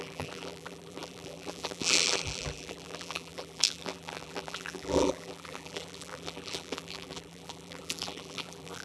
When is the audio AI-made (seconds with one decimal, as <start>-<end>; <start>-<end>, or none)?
0.0-8.8